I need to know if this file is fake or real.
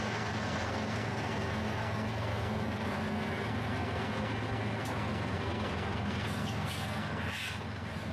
fake